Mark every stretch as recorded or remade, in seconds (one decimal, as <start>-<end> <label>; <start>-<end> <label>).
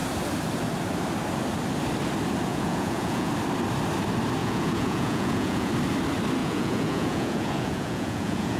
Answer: 0.0-2.5 recorded; 2.5-3.3 remade; 3.3-4.4 recorded; 4.4-5.7 remade; 5.7-6.4 recorded; 6.4-8.6 remade